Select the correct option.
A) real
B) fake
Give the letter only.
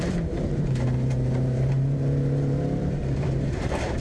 B